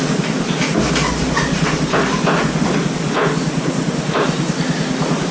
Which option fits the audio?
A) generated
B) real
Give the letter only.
B